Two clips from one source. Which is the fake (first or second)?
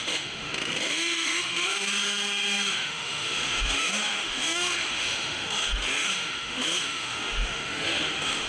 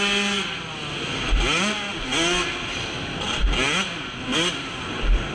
first